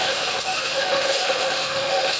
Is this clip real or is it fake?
fake